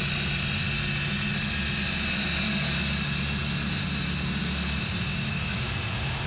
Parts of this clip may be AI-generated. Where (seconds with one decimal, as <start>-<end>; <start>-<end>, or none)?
5.1-5.7